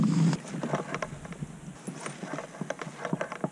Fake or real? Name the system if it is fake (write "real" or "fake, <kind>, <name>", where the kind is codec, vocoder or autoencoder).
real